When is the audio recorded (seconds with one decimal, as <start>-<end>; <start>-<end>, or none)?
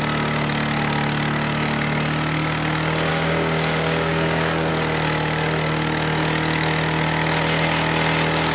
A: 0.0-3.1; 4.7-8.5